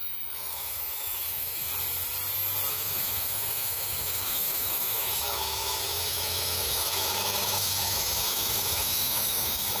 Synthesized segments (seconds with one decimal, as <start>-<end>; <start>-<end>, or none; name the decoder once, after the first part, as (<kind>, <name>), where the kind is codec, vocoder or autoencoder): 0.0-1.7 (autoencoder, DAC-VAE); 2.7-9.8